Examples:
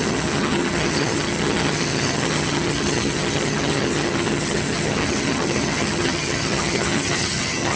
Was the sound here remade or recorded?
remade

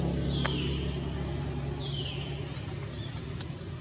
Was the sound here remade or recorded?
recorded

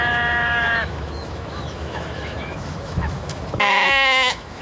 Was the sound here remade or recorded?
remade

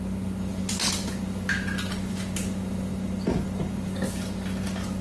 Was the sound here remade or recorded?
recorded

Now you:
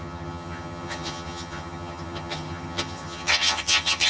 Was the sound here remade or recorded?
remade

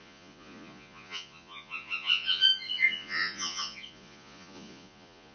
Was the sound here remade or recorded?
remade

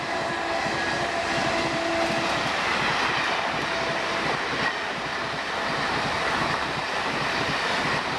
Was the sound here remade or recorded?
recorded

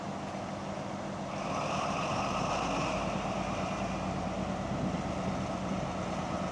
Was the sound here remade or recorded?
recorded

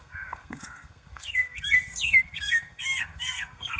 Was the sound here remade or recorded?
remade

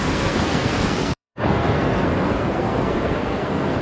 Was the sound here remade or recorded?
remade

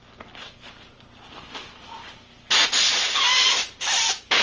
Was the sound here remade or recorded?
recorded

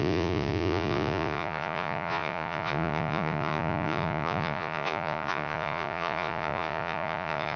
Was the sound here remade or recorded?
remade